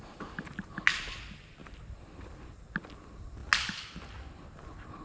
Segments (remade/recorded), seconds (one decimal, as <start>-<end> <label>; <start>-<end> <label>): 0.0-1.6 recorded; 1.6-2.1 remade; 2.1-5.0 recorded